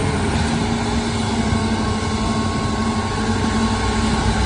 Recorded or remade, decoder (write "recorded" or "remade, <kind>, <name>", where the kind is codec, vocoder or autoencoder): recorded